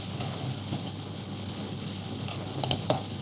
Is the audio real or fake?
fake